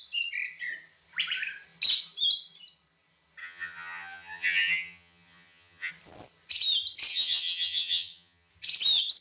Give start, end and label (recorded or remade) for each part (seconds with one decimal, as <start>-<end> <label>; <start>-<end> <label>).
0.0-3.4 recorded; 3.4-5.9 remade; 5.9-7.1 recorded; 7.1-8.5 remade; 8.5-9.2 recorded